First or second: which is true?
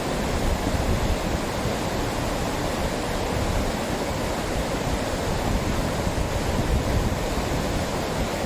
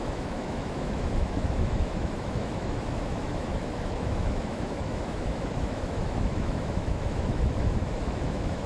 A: first